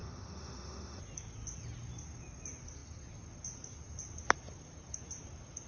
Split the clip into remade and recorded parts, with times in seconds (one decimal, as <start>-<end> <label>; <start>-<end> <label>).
0.0-1.0 remade; 1.0-5.7 recorded